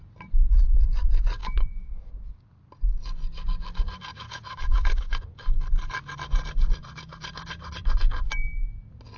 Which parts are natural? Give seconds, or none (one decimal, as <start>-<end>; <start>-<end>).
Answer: 0.0-1.4; 2.1-4.1; 5.1-9.2